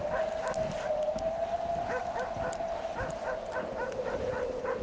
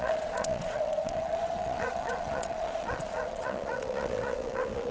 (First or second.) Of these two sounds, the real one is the first